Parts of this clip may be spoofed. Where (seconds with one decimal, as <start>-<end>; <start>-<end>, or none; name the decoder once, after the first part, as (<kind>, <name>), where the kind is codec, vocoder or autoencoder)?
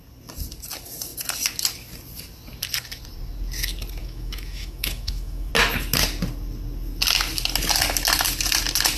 4.0-5.5 (autoencoder, DAC-VAE)